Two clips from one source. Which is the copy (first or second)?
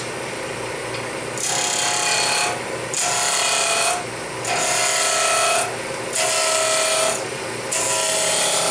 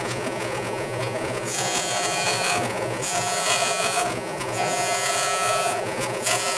second